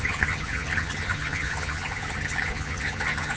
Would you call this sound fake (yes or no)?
yes